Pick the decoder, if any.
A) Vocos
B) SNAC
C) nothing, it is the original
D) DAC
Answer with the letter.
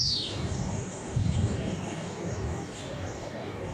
D